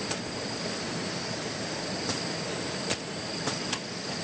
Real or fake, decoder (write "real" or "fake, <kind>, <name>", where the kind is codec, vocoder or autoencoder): real